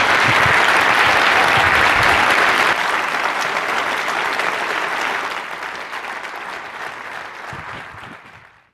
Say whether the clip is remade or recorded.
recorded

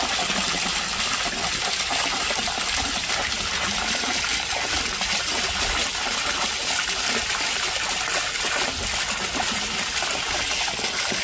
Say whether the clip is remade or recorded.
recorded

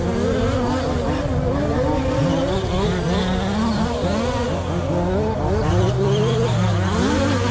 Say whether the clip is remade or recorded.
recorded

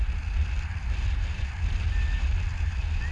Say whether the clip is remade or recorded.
recorded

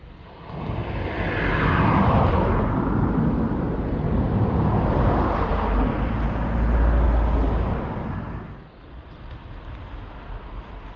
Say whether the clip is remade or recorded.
recorded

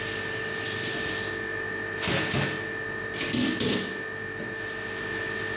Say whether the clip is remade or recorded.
recorded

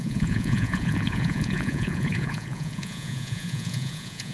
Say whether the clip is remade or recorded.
remade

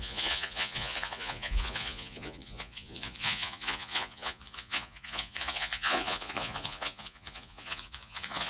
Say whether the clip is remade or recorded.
remade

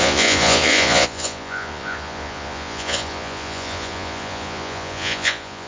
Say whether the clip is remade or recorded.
remade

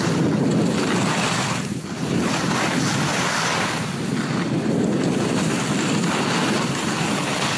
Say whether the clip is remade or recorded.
recorded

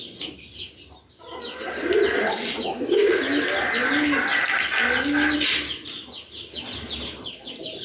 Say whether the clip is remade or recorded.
recorded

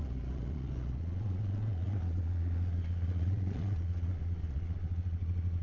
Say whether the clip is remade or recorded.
remade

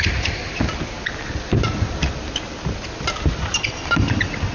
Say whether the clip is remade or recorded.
recorded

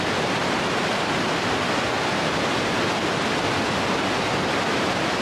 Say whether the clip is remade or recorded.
recorded